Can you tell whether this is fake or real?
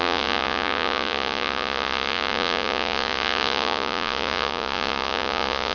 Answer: fake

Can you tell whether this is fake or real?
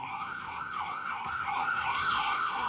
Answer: fake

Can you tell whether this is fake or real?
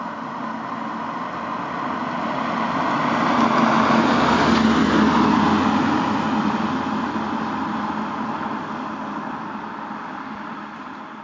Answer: real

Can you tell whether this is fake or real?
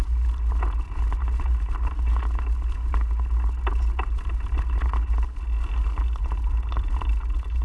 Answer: real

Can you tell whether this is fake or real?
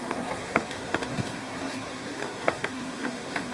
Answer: fake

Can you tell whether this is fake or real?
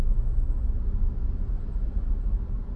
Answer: real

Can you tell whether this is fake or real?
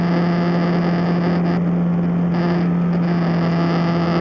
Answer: real